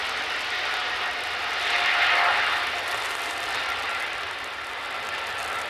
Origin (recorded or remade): recorded